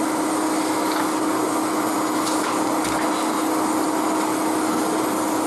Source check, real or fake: real